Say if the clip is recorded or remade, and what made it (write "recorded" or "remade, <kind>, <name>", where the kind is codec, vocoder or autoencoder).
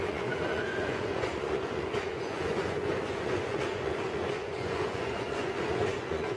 remade, vocoder, Vocos